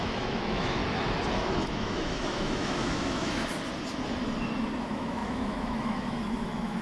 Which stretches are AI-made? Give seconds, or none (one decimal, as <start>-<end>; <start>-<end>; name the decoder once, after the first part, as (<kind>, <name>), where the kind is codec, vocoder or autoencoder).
0.0-0.8 (autoencoder, DAC-VAE); 1.5-3.5; 4.8-6.8